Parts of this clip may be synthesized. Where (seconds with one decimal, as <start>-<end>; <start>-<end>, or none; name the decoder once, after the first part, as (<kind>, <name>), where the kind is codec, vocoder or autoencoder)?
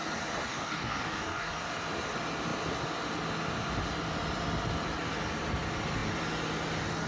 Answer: 0.5-1.6 (codec, DAC)